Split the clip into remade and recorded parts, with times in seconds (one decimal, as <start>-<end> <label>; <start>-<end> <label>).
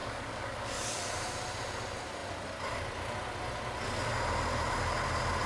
0.0-1.0 remade; 1.0-5.5 recorded